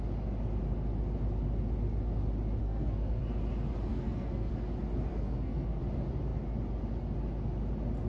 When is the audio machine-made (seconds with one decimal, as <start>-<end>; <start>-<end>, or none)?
2.6-3.2; 3.9-4.5; 5.1-5.8